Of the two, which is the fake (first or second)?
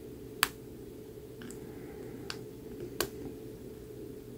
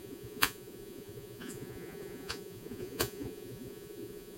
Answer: second